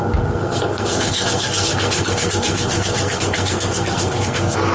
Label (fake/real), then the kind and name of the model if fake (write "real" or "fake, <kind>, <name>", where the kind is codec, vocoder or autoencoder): fake, codec, SNAC